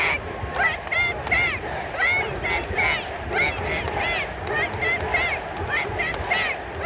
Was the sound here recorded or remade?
recorded